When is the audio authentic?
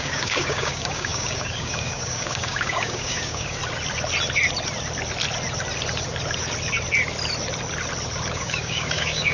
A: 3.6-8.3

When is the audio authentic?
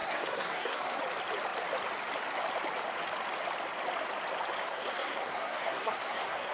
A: 1.0-4.6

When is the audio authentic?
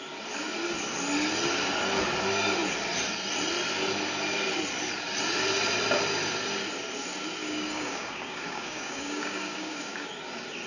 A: 0.0-7.4; 10.1-10.7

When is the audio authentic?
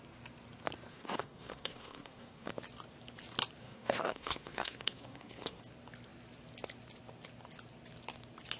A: 0.0-0.9; 2.5-3.6; 5.6-8.6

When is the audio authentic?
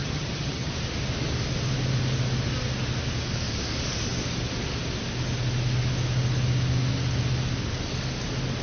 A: 0.7-8.6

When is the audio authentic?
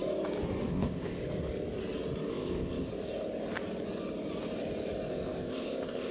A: 0.0-0.7; 1.2-2.3; 2.9-5.1